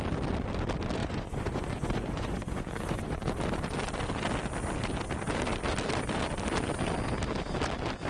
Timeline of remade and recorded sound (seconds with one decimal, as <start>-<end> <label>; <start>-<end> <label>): 0.0-1.0 recorded; 1.0-3.3 remade; 3.3-8.1 recorded